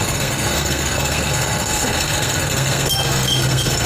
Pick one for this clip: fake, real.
fake